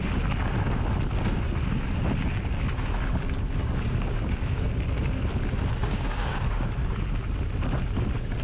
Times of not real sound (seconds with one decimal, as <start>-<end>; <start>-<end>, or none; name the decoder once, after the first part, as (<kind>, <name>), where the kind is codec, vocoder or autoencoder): 3.6-4.7 (codec, DAC); 5.8-6.7